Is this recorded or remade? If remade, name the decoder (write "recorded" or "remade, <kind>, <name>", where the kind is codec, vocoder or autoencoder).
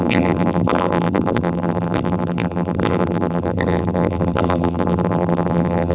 remade, vocoder, BigVGAN v2